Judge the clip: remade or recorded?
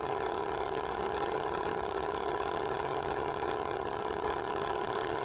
remade